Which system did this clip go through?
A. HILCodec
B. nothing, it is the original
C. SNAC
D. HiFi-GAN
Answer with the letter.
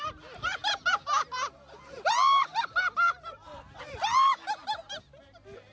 B